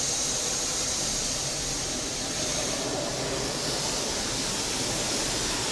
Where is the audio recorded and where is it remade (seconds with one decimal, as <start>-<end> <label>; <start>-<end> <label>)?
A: 0.0-5.7 recorded